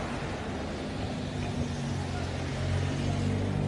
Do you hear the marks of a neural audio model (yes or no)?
no